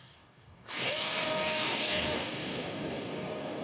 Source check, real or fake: fake